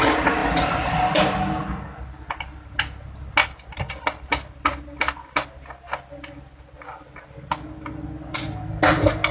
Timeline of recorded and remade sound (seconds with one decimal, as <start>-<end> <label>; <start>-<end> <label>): 0.0-9.3 recorded